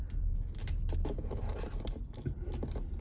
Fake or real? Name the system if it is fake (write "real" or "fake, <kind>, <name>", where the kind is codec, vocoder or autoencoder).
fake, vocoder, BigVGAN v2